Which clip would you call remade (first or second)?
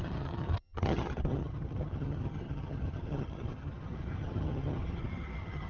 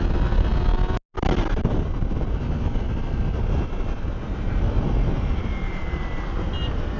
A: first